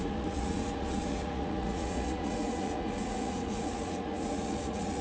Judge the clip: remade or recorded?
remade